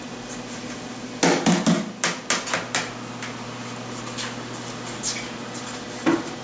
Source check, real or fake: real